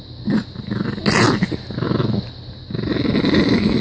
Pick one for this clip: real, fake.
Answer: real